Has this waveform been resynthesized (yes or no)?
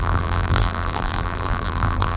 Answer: yes